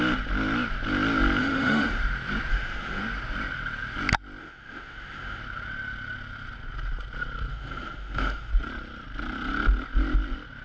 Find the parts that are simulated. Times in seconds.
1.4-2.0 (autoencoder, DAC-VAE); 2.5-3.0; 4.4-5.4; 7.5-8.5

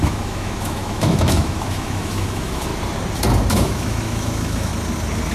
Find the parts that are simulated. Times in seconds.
0.0-2.7 (autoencoder, DAC-VAE); 3.5-4.7

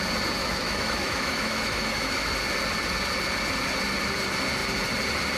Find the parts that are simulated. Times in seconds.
0.4-2.3 (autoencoder, DAC-VAE)

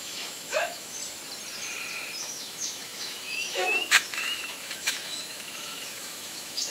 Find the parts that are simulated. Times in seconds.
0.0-1.0 (autoencoder, DAC-VAE); 2.2-6.7

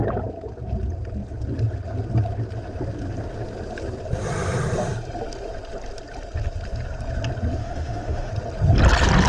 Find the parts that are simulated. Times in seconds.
7.6-8.3 (autoencoder, DAC-VAE)